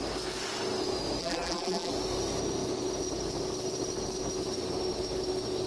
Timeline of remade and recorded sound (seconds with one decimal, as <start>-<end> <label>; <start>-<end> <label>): 0.0-1.2 recorded; 1.2-1.9 remade; 1.9-5.7 recorded